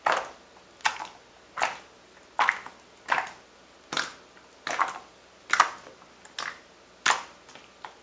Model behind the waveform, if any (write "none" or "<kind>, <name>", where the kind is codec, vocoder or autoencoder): none